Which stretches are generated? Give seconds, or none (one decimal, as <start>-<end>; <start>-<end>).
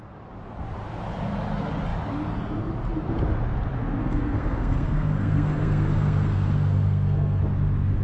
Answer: 4.0-7.4